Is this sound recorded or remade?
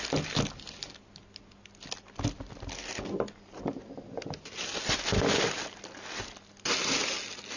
recorded